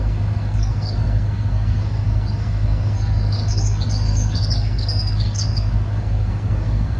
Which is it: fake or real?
fake